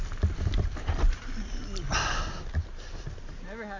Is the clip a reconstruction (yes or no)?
no